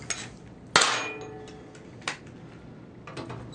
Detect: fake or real real